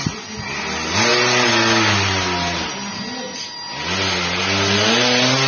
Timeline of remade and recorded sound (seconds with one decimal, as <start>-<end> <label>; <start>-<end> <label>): 0.0-5.5 recorded